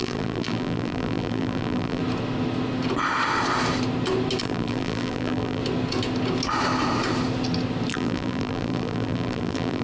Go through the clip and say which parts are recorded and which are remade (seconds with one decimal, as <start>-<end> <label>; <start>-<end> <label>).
0.0-2.0 remade; 2.0-4.4 recorded; 4.4-5.6 remade; 5.6-7.9 recorded; 7.9-9.8 remade